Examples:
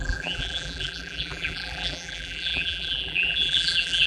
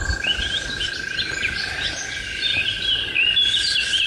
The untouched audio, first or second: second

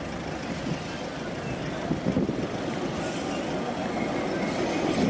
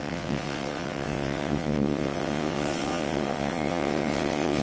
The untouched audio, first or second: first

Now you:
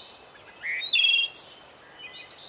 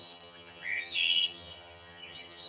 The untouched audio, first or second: first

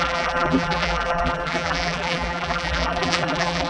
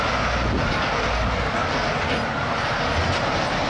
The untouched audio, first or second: second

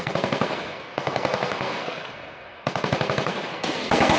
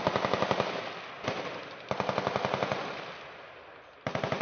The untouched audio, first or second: second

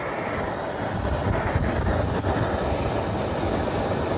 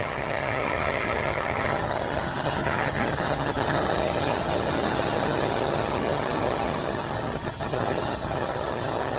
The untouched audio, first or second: first